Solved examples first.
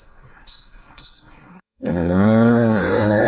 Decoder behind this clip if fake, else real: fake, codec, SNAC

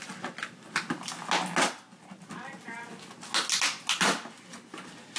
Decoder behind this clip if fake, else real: real